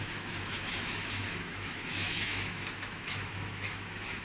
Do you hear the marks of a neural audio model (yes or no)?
yes